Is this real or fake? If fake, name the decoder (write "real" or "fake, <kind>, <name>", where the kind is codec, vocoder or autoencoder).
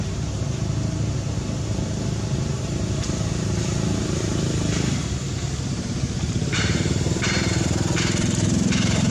fake, vocoder, BigVGAN v2